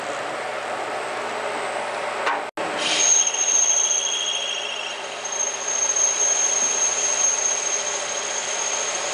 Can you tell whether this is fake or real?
real